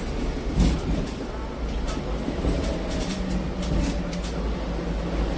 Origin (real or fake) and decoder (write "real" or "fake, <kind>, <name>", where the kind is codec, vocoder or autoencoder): real